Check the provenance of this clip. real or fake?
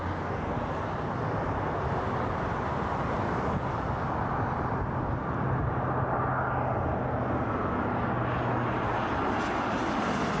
real